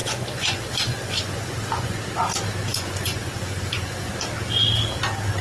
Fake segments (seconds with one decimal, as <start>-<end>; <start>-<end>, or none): 0.0-2.0; 2.7-4.1